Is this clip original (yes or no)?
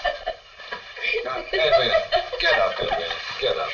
yes